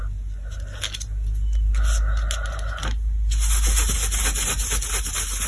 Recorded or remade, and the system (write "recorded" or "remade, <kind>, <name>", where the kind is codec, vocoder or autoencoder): recorded